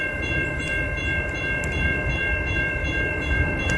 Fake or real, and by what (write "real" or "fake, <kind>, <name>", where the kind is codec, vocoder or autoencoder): fake, vocoder, BigVGAN v2